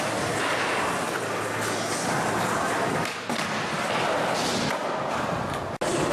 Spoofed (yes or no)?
no